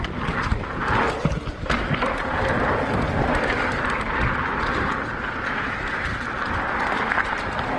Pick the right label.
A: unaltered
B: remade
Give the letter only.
A